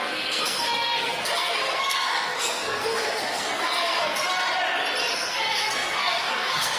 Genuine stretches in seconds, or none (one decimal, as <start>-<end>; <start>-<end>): 4.3-5.1

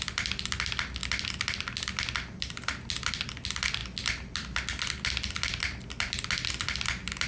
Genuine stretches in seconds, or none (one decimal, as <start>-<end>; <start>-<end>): 0.0-7.3

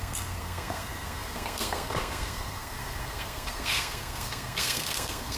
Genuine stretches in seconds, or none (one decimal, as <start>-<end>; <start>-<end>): none

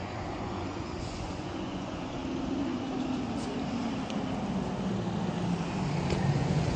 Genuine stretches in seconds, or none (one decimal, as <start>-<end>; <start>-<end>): 2.2-6.3

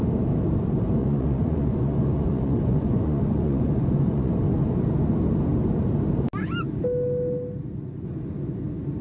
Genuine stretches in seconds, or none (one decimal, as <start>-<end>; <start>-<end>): 0.0-1.0; 4.3-9.0

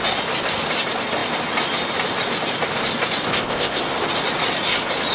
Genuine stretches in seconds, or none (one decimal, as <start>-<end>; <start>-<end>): 0.0-3.3; 3.8-5.1

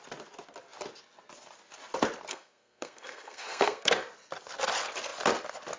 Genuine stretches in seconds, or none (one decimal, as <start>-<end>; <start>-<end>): 0.0-2.3; 3.9-5.8